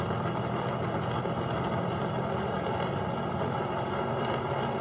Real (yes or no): no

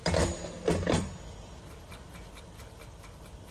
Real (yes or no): yes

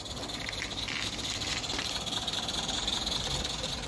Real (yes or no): yes